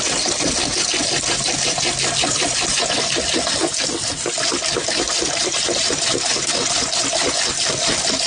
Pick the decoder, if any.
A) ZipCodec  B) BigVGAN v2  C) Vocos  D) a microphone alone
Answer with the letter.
D